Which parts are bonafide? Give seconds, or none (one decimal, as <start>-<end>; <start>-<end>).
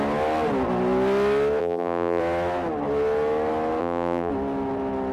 0.0-1.6; 2.2-3.8; 4.3-5.1